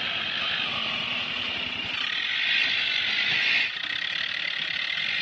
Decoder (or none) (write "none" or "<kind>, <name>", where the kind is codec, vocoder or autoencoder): none